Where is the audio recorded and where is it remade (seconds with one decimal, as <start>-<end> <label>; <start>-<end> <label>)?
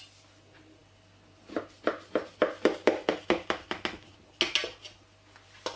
0.0-5.8 recorded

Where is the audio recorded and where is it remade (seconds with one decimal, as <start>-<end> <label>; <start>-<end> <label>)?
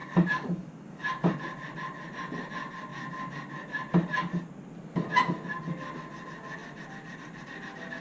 0.0-1.0 remade; 1.0-8.0 recorded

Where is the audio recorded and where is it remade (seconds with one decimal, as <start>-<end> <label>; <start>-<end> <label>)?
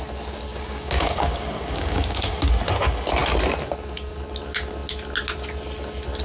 0.0-0.5 recorded; 0.5-2.5 remade; 2.5-6.2 recorded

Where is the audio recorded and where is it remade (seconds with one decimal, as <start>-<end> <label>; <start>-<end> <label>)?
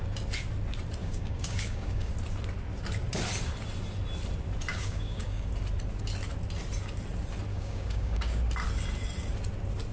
0.0-1.0 recorded; 1.0-2.1 remade; 2.1-4.7 recorded; 4.7-5.5 remade; 5.5-7.5 recorded; 7.5-8.4 remade; 8.4-9.9 recorded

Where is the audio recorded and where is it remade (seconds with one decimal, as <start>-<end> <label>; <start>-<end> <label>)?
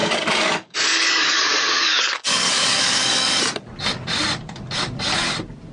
0.0-3.4 remade; 3.4-5.7 recorded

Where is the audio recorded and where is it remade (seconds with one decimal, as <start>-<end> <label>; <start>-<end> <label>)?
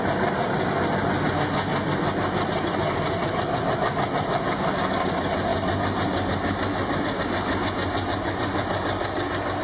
0.0-9.6 recorded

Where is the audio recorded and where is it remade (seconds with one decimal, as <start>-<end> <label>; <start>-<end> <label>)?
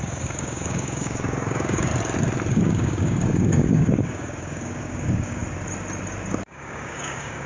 0.0-1.9 remade; 1.9-2.5 recorded; 2.5-5.4 remade; 5.4-6.4 recorded; 6.4-7.5 remade